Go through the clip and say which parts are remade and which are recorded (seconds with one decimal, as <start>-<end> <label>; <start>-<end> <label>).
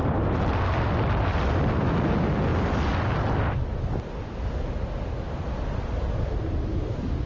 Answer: 0.0-7.3 recorded